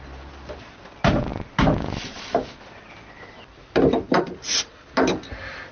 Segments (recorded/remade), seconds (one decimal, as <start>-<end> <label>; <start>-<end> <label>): 0.0-5.7 recorded